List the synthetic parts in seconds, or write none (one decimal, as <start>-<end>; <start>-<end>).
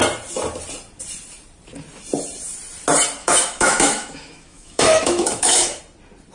3.2-5.8